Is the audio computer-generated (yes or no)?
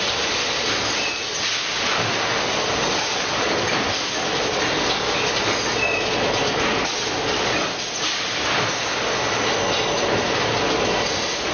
no